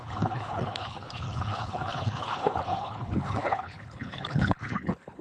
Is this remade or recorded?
remade